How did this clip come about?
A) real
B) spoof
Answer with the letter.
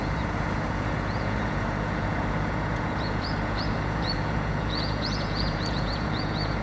B